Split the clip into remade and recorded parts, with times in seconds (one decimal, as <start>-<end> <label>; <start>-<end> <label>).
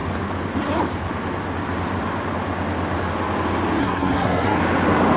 0.0-3.8 recorded; 3.8-4.6 remade; 4.6-5.2 recorded